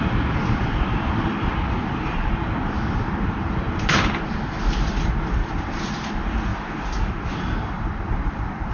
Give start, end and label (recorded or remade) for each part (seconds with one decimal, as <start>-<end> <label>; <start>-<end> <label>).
0.0-6.5 remade; 6.5-7.1 recorded; 7.1-8.7 remade